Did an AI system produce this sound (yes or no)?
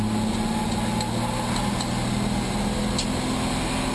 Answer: no